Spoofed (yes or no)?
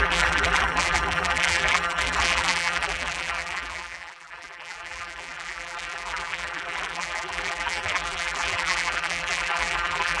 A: yes